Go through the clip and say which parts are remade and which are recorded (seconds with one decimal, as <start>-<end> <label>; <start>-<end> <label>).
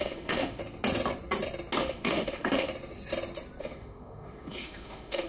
0.0-0.6 remade; 0.6-1.8 recorded; 1.8-2.7 remade; 2.7-3.6 recorded; 3.6-5.3 remade